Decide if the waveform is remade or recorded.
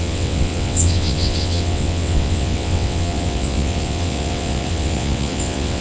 remade